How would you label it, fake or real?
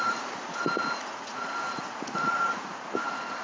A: fake